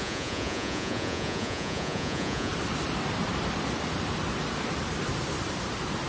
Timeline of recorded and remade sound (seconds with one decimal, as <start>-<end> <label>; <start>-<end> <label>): 0.0-2.5 remade; 2.5-6.1 recorded